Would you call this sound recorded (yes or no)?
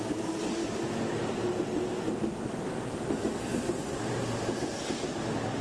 yes